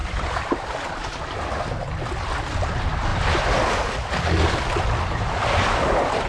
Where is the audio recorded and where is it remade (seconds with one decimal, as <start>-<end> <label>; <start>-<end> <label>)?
0.0-6.3 recorded